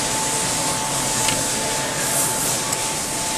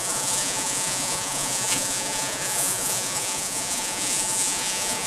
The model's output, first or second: second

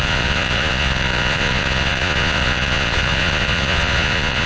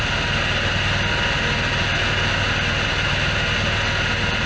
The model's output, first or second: first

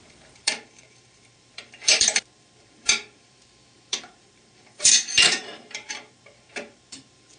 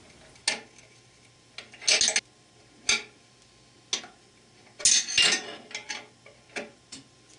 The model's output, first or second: first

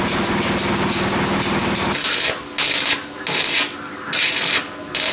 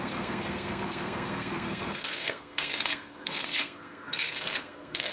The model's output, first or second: second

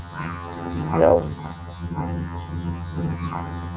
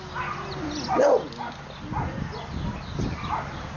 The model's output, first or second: first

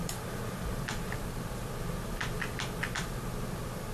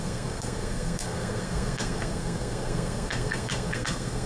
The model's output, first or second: second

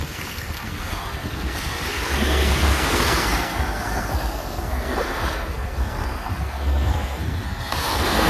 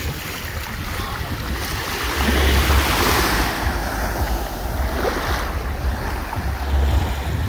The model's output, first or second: first